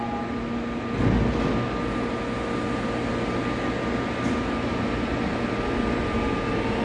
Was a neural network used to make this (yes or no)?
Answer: no